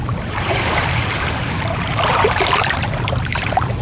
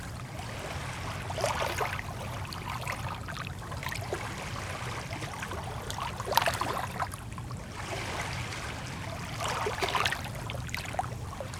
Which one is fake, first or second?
first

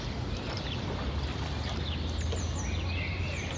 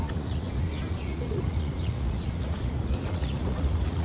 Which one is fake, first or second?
second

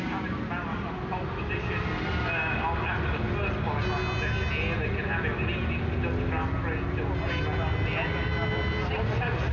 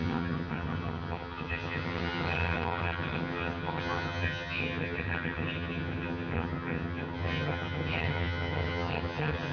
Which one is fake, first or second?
second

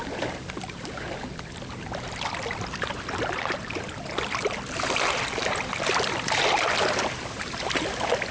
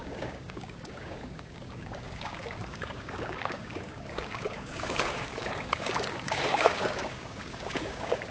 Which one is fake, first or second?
second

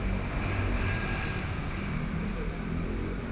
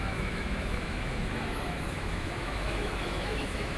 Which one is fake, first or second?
second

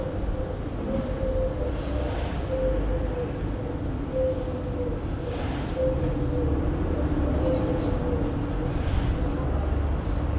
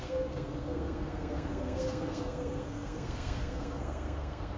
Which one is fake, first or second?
second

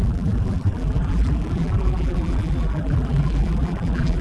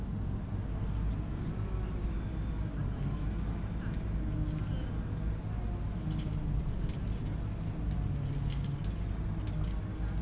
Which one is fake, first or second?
first